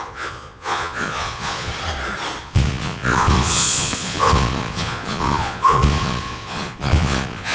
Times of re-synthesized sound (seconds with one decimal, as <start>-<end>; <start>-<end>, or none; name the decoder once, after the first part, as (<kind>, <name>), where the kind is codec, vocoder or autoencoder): 0.0-1.7 (vocoder, Vocos); 2.4-7.5